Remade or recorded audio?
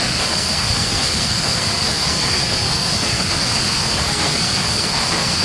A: remade